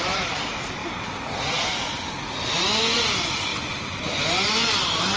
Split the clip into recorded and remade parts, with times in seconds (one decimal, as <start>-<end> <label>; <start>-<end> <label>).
0.0-5.2 recorded